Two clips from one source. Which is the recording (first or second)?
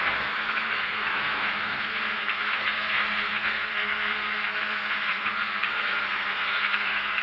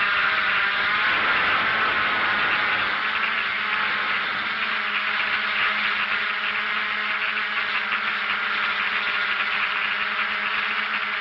second